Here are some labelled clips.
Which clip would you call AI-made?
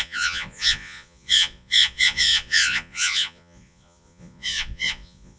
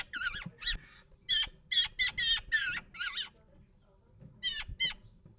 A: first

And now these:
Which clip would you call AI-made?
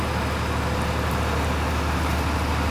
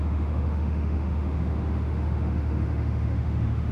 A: second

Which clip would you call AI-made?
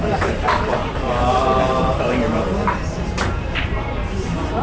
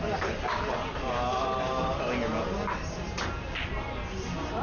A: first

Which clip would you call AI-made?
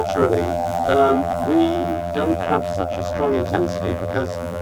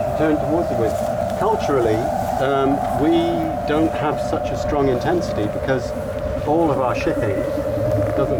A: first